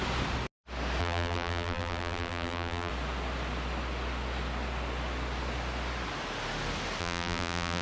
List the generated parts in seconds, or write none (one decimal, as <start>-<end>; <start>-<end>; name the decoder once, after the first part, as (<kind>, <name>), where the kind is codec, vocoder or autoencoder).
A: 1.0-2.9 (vocoder, BigVGAN v2); 7.0-7.8